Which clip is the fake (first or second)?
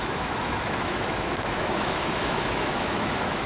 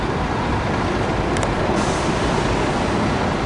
first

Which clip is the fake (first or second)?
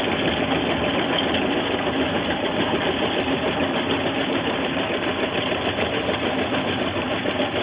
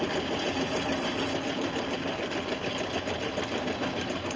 first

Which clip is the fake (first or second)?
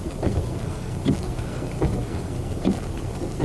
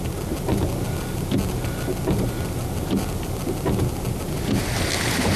first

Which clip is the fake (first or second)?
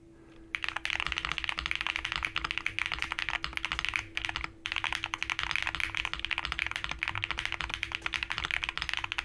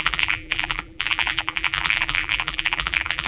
second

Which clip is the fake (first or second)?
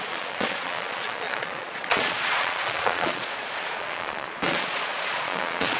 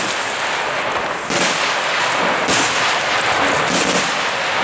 first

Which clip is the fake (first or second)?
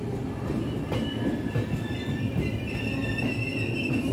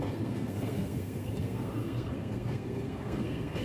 second